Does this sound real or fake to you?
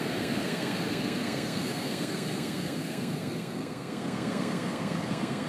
fake